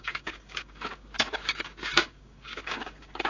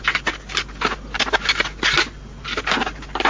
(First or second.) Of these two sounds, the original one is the second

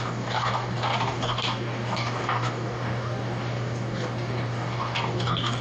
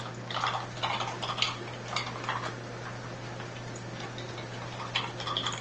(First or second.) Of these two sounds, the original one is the second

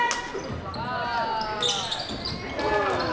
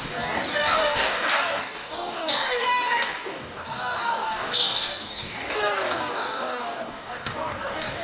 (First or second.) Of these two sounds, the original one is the first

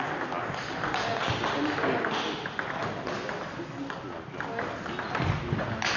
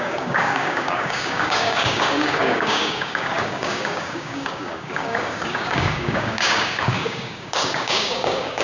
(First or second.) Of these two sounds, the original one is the first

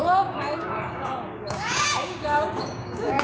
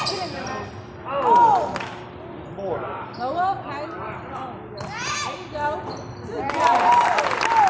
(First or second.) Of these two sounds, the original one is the second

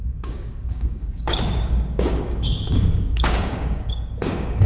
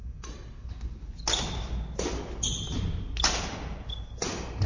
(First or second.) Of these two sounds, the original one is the second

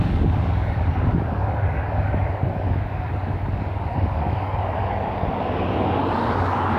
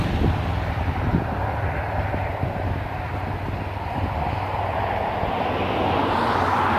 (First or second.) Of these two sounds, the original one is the second